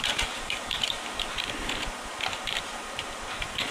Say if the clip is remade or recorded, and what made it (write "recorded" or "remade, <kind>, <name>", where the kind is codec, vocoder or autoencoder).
remade, vocoder, BigVGAN v2